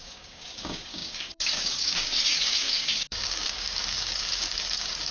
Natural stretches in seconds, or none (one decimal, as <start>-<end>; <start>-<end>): none